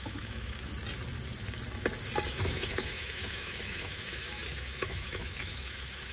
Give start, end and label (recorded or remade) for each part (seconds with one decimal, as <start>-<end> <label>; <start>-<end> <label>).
0.0-0.7 remade; 0.7-2.3 recorded; 2.3-6.1 remade